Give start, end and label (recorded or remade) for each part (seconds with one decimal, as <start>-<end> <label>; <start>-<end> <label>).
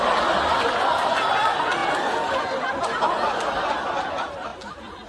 0.0-4.5 recorded; 4.5-5.1 remade